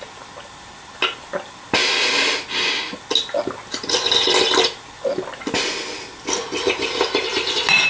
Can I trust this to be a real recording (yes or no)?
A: yes